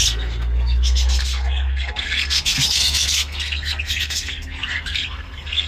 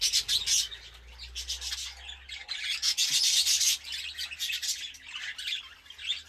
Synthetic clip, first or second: first